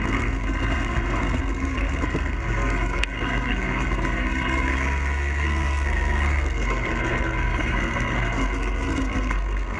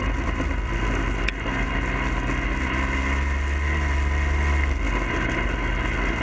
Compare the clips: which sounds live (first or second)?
second